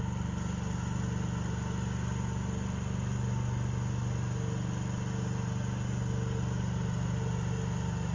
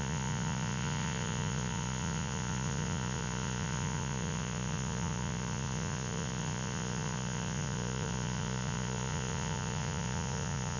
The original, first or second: first